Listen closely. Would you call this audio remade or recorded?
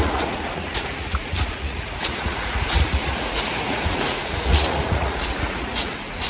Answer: remade